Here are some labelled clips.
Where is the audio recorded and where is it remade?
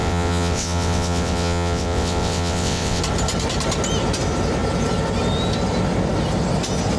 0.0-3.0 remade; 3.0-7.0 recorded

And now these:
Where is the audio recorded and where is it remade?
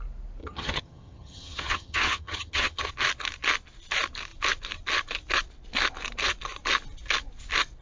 0.0-0.4 recorded; 0.4-2.9 remade; 2.9-7.8 recorded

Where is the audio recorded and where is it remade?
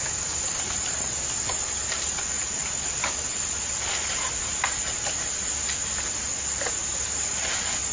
0.0-7.9 recorded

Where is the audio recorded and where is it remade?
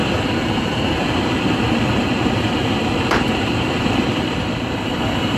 0.0-5.4 remade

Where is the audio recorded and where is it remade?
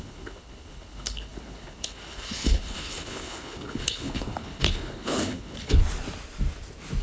0.0-5.8 remade; 5.8-7.0 recorded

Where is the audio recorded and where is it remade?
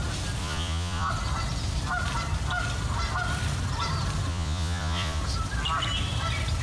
0.0-0.4 recorded; 0.4-1.1 remade; 1.1-4.3 recorded; 4.3-5.2 remade; 5.2-6.6 recorded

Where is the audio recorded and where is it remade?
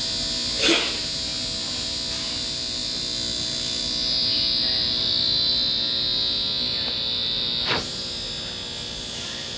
0.0-9.6 recorded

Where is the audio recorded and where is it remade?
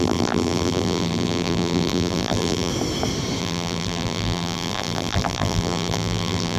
0.0-2.7 remade; 2.7-3.4 recorded; 3.4-6.6 remade